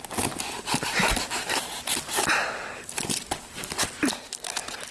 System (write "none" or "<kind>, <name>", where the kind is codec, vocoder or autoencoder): none